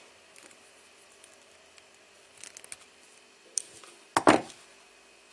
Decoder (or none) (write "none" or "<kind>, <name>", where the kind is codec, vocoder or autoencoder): none